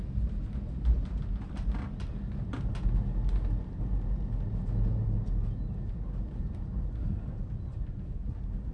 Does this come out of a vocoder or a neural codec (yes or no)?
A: no